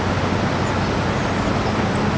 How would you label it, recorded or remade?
recorded